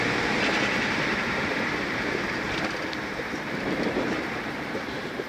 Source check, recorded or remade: remade